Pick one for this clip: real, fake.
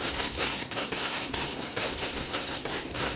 fake